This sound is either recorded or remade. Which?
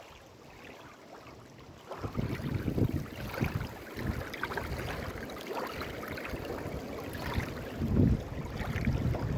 recorded